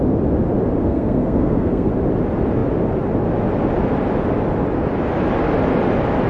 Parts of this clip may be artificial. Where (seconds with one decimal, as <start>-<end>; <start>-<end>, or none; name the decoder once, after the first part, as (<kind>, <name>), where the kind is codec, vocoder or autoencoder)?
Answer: 0.8-1.9 (codec, SNAC)